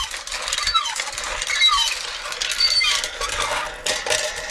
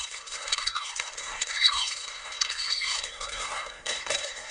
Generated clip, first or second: second